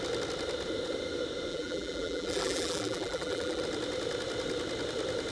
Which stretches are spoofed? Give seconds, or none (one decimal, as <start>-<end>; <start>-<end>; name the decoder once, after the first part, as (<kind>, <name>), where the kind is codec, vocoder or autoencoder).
1.5-3.6 (vocoder, BigVGAN v2)